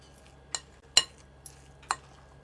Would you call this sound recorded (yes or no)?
yes